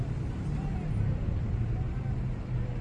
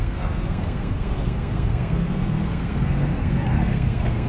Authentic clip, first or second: first